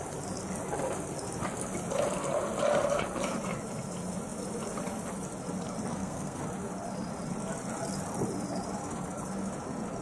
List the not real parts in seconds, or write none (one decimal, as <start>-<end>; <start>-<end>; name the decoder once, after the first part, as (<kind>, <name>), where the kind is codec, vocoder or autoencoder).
5.9-6.4 (codec, SNAC)